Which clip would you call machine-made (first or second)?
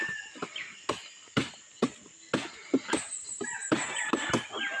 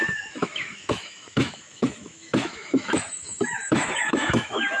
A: second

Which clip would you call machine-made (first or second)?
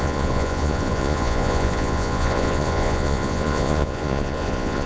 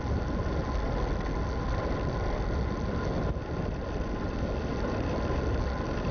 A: first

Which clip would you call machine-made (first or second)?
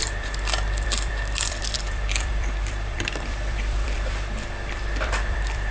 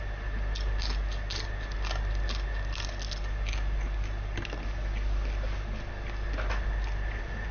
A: first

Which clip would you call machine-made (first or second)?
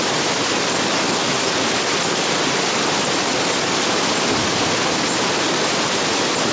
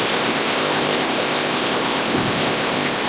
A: second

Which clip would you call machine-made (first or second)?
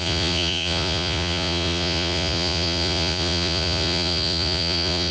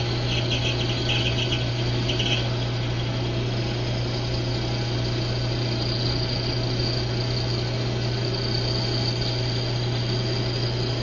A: first